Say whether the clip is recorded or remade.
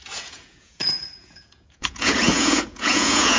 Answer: remade